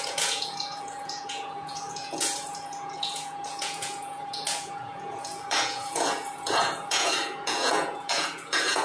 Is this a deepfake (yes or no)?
yes